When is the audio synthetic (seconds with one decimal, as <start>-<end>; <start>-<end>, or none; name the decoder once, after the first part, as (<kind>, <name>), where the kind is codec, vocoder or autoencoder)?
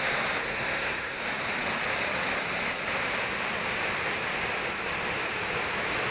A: 0.4-1.2 (codec, SNAC)